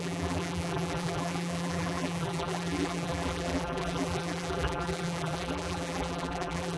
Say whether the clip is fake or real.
fake